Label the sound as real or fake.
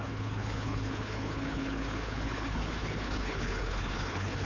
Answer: fake